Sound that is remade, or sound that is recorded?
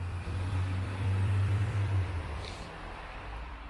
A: remade